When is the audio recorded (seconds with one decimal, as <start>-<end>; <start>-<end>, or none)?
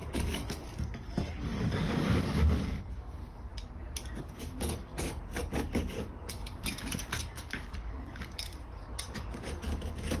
3.5-4.2